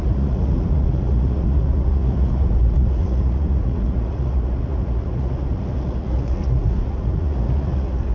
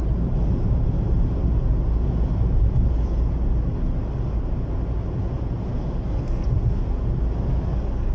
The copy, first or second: first